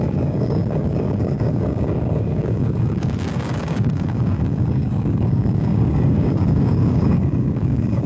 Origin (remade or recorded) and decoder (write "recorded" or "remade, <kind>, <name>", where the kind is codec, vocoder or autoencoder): remade, codec, DAC